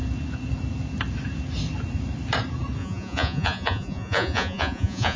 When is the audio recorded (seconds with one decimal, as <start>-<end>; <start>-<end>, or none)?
0.0-2.8

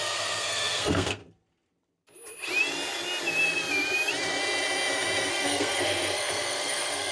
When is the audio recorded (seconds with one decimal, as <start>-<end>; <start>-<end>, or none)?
1.2-5.3

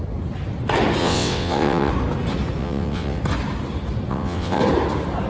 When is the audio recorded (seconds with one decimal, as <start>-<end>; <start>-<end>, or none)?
0.0-1.0; 1.9-2.6; 3.2-4.1; 4.6-5.3

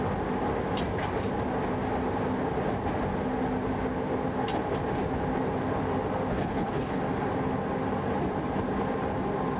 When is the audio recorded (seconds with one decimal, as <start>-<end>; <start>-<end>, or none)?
0.0-6.3; 7.0-9.6